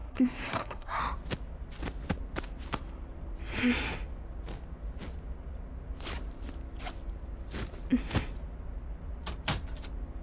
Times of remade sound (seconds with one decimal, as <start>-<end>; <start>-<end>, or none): 0.0-1.0